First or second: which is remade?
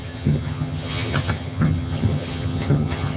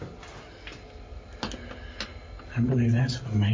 first